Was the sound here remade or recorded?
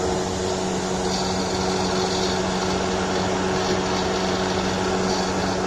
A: recorded